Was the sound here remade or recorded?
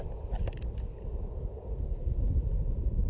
recorded